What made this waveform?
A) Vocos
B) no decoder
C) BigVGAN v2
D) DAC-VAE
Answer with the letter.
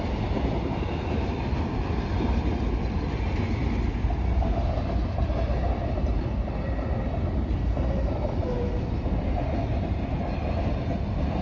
B